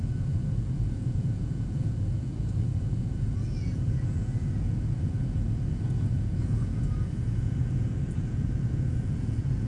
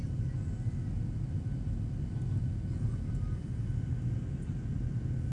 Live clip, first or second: second